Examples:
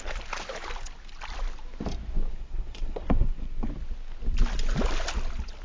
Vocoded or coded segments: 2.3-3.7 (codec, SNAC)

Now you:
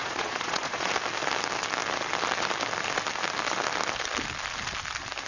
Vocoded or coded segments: 0.0-0.9 (vocoder, Vocos)

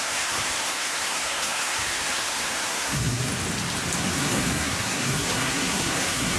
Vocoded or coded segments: 0.0-3.3 (codec, SNAC); 4.0-6.4